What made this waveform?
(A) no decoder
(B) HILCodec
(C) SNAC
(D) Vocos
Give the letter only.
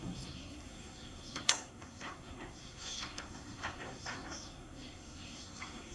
C